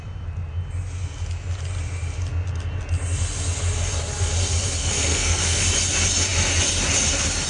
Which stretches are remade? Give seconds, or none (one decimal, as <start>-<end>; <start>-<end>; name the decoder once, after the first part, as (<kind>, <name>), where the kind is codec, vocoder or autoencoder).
4.8-5.6 (codec, SNAC)